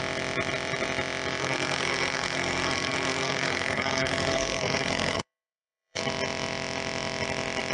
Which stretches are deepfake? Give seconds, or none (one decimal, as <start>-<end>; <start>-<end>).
1.4-6.0